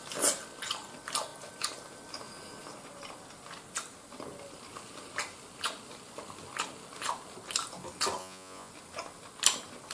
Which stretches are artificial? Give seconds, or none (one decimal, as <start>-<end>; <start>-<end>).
8.2-8.7